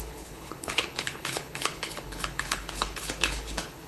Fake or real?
fake